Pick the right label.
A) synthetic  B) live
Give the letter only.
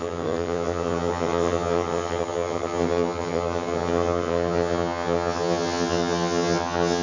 A